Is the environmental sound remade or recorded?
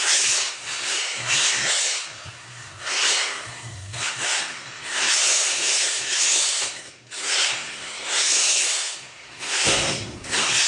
remade